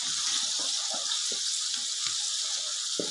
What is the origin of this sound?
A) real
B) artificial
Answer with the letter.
A